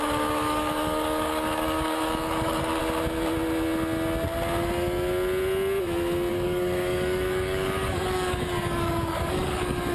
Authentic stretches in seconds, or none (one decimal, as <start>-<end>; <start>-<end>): 2.8-6.3